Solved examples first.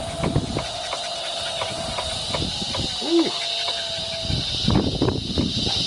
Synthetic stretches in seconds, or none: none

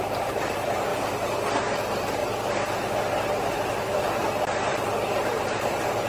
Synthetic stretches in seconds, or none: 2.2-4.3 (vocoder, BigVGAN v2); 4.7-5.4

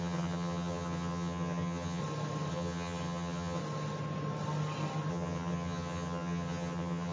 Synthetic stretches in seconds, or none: 0.0-2.0 (vocoder, HiFi-GAN); 2.5-3.6; 5.1-7.1

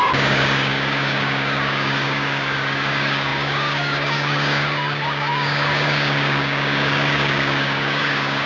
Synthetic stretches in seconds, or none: 0.0-8.5 (codec, DAC)

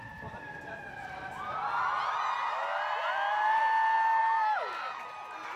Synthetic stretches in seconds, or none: 2.6-3.6 (vocoder, BigVGAN v2)